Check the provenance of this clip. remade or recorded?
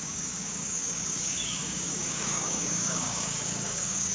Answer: remade